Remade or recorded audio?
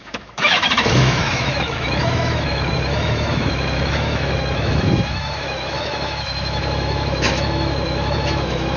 remade